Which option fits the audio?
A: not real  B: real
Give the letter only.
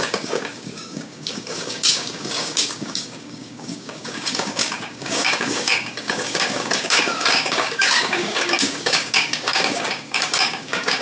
A